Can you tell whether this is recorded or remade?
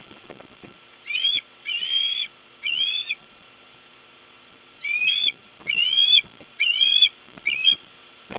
remade